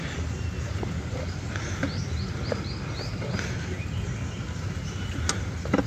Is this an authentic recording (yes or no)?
yes